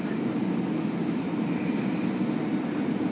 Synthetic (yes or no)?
no